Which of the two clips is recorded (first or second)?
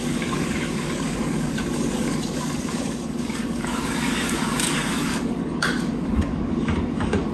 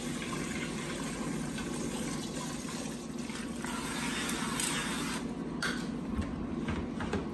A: second